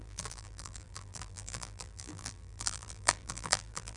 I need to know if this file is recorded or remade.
remade